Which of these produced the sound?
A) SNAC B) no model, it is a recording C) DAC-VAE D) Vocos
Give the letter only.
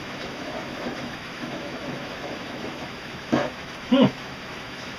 C